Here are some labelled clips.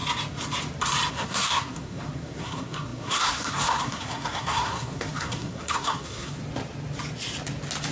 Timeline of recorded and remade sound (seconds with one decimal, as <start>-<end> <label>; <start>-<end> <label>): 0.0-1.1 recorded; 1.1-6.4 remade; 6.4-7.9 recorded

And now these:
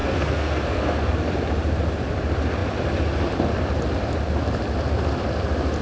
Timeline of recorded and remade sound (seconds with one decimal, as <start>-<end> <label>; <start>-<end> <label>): 0.0-1.1 remade; 1.1-5.8 recorded

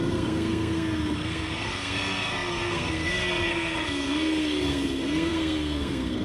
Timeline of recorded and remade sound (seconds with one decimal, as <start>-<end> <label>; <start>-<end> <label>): 0.0-6.2 remade